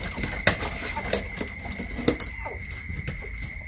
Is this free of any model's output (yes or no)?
yes